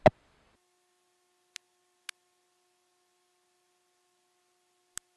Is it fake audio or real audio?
real